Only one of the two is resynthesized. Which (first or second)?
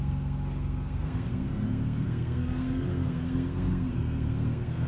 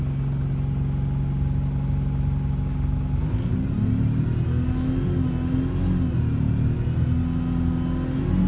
first